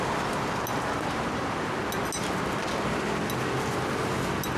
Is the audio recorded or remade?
recorded